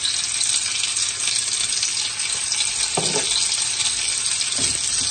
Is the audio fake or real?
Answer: real